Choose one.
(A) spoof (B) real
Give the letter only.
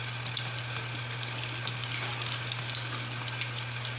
B